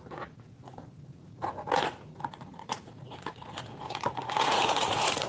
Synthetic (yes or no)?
yes